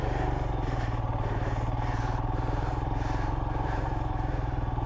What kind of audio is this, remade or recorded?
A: remade